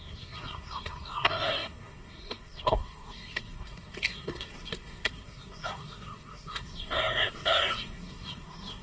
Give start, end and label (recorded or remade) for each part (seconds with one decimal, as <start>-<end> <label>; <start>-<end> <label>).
0.0-8.8 remade